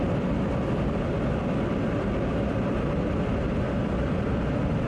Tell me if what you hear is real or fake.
real